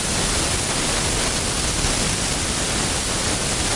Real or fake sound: real